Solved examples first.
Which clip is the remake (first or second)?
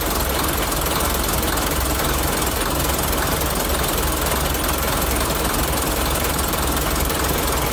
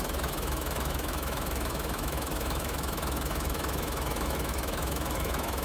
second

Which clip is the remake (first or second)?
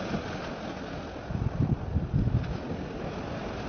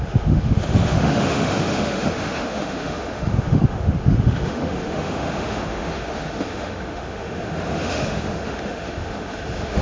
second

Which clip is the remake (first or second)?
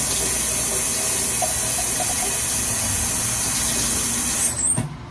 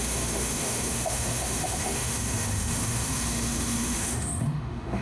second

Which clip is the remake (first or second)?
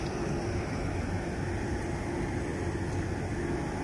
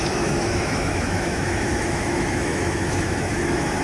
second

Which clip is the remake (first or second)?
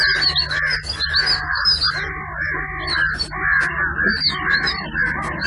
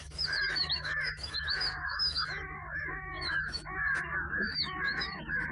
second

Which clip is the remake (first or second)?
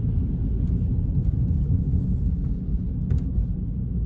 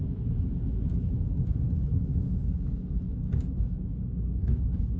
second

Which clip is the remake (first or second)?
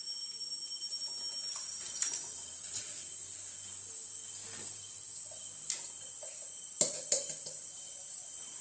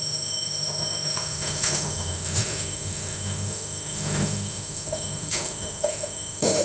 second